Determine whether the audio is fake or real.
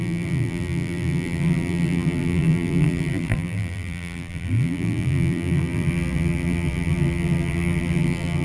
fake